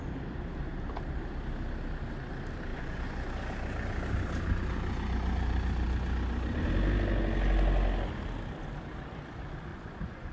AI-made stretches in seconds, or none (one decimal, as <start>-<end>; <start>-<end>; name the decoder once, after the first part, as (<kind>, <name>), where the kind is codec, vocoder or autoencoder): 2.7-3.3 (vocoder, Vocos); 9.7-10.3